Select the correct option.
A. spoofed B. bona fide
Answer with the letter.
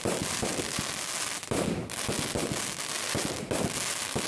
B